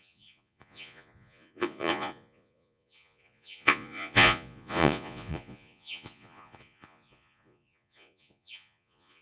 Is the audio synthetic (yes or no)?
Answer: yes